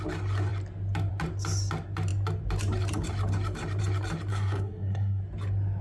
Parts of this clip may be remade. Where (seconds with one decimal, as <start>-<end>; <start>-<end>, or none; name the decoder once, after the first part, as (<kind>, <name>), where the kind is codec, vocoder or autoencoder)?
4.3-5.2 (codec, SNAC)